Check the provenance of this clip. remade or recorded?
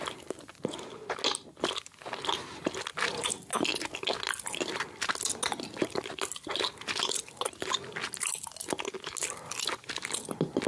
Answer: recorded